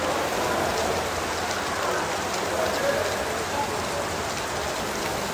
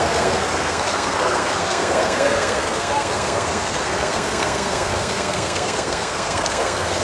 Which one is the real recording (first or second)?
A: first